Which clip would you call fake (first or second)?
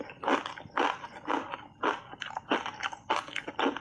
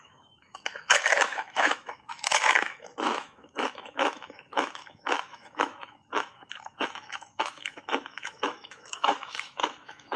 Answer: second